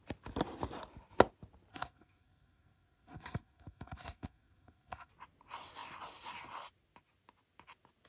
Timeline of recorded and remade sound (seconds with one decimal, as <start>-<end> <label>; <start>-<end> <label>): 0.0-1.7 recorded; 1.7-5.1 remade; 5.1-8.1 recorded